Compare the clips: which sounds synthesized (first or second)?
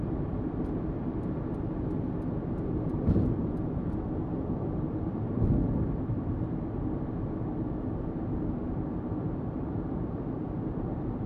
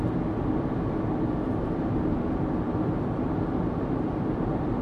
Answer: first